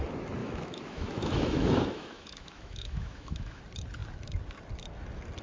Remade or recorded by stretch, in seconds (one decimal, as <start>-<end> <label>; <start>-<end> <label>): 0.0-0.4 recorded; 0.4-3.6 remade; 3.6-5.4 recorded